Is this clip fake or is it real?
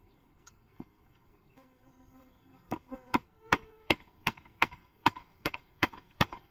fake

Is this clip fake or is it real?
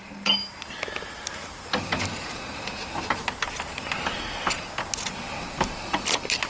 real